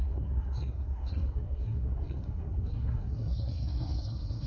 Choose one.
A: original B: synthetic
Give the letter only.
B